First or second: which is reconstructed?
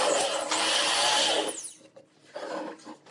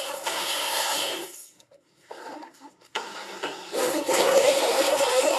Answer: second